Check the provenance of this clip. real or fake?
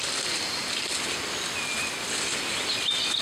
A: real